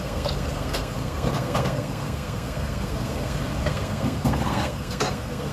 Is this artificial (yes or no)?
yes